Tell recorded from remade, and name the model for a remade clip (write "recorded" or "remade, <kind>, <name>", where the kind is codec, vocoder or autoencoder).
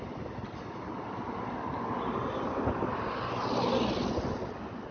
recorded